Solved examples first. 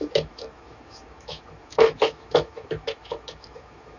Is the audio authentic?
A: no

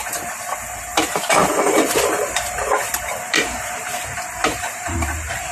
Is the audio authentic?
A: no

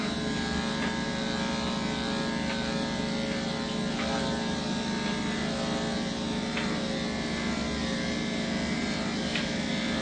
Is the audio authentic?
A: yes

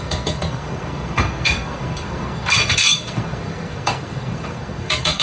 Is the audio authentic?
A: no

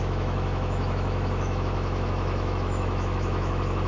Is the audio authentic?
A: no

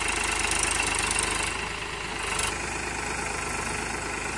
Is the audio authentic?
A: yes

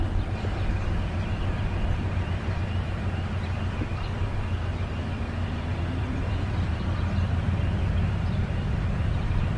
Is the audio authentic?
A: no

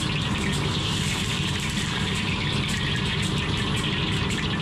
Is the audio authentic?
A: yes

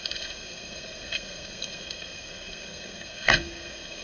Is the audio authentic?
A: no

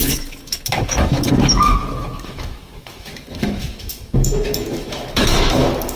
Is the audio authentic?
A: no